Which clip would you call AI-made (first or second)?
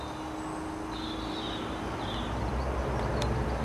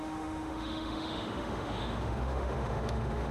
second